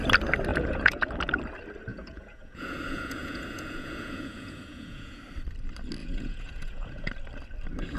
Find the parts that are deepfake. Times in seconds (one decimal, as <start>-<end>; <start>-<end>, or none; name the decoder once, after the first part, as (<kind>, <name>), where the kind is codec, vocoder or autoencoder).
0.5-1.1 (vocoder, Vocos); 1.9-5.2; 6.0-7.1